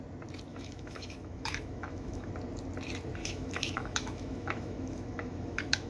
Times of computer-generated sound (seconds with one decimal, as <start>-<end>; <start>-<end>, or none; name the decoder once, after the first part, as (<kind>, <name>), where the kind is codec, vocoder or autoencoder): 0.5-2.3 (autoencoder, DAC-VAE); 3.2-5.9